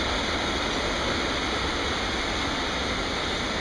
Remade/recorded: recorded